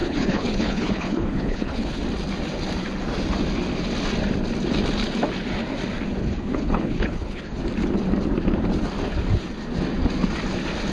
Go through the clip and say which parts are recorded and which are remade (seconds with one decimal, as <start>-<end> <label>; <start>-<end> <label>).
0.0-2.0 remade; 2.0-6.2 recorded; 6.2-7.6 remade; 7.6-10.9 recorded